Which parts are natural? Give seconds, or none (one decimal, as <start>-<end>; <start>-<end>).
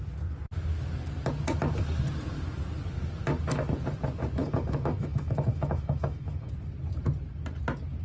0.0-4.4; 6.5-8.0